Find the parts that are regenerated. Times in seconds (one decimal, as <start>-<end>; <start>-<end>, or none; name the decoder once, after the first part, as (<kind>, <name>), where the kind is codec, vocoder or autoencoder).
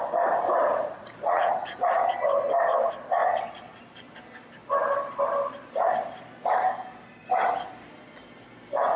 0.7-2.0 (vocoder, Vocos)